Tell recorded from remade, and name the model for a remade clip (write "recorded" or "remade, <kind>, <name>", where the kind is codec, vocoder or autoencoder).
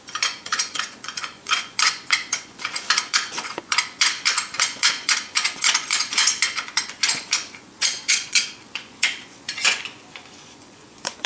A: remade, vocoder, Vocos